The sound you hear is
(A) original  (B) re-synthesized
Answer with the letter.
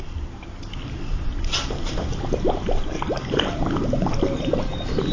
A